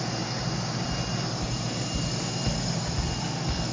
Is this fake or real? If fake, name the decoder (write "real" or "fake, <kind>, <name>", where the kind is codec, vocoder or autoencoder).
real